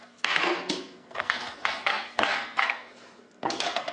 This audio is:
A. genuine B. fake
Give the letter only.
B